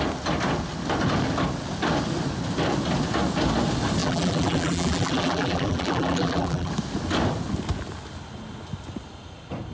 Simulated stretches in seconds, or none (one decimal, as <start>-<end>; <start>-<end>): 4.0-6.7